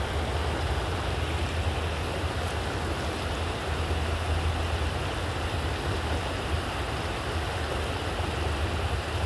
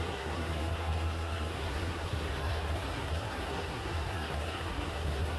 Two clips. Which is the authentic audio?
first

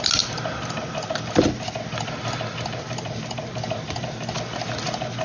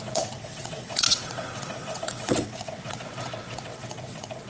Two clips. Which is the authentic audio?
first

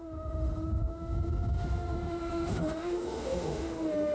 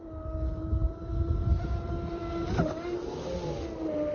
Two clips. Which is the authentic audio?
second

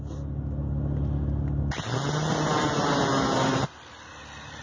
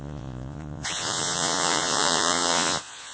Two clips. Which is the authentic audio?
first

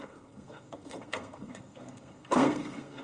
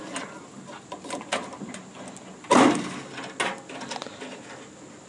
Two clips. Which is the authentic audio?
second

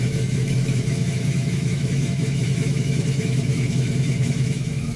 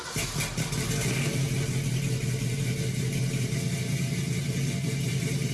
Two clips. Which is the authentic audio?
second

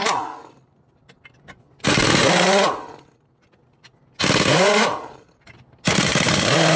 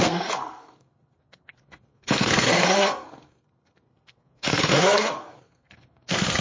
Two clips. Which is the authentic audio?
first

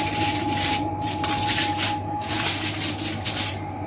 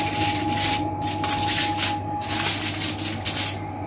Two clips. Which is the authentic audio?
second